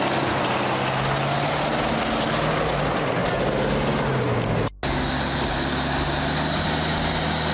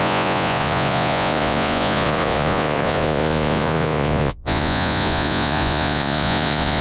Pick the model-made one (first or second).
second